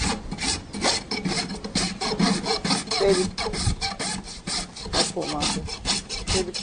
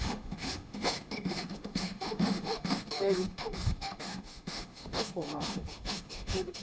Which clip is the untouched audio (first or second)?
first